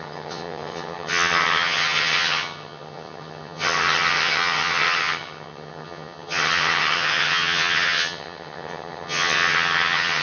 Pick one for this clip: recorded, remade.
remade